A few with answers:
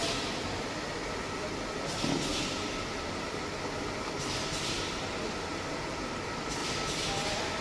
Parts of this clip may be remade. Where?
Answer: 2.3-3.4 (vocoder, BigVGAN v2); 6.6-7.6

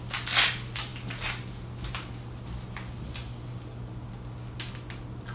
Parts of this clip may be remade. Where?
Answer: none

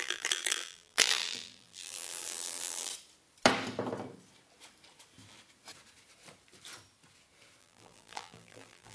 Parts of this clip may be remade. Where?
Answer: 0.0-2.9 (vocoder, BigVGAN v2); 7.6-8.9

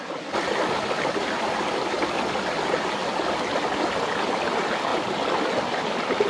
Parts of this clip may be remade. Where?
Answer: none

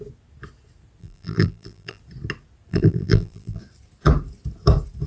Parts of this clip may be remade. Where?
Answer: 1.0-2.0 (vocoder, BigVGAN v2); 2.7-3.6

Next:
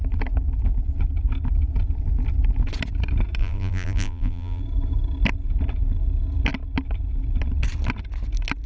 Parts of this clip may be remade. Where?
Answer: 3.4-4.6 (vocoder, BigVGAN v2)